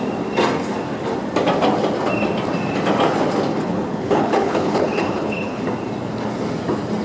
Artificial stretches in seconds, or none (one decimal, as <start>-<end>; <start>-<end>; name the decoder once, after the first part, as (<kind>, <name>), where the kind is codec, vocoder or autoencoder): 3.5-5.6 (codec, HILCodec)